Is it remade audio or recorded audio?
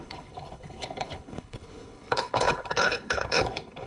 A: remade